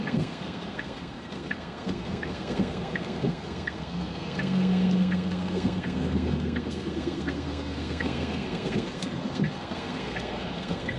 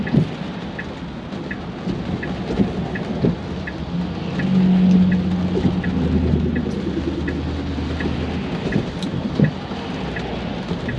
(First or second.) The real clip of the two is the second